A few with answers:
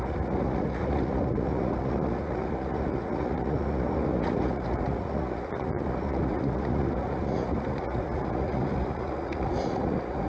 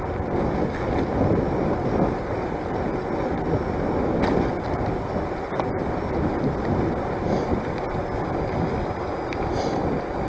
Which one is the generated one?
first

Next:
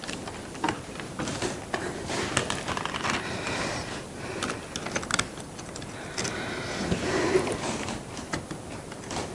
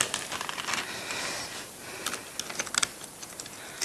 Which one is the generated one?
first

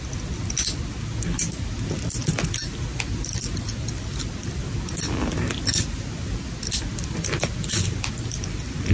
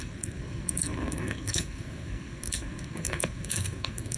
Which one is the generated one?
second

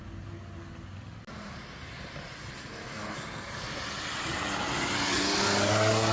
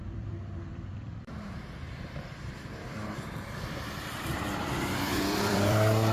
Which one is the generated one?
second